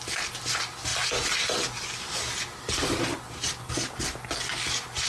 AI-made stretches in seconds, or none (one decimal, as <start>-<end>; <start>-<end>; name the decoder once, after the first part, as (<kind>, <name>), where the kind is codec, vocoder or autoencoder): none

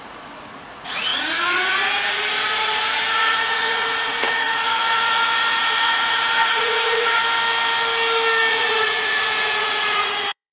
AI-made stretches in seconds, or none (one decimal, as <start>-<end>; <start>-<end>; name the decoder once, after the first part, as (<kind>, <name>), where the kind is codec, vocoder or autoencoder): 0.0-7.2 (vocoder, Vocos); 8.5-10.5